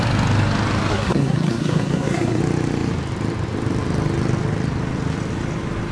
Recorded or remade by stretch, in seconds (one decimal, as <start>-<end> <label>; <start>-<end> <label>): 0.0-0.9 recorded; 0.9-2.4 remade; 2.4-5.9 recorded